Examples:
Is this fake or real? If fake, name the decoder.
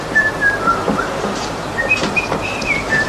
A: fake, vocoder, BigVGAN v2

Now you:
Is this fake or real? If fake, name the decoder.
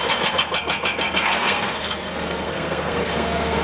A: fake, codec, SNAC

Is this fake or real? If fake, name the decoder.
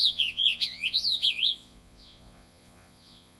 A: fake, vocoder, Vocos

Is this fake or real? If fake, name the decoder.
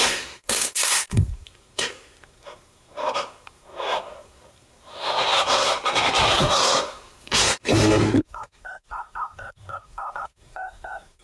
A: fake, codec, SNAC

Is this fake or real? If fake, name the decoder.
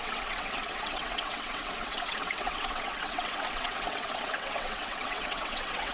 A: fake, vocoder, WaveNeXt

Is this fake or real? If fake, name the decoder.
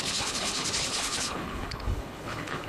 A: fake, codec, HILCodec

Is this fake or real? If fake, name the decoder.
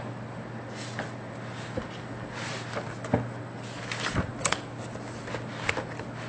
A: real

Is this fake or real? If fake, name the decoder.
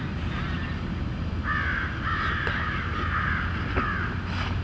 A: real